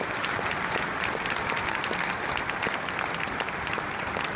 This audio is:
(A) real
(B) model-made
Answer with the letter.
A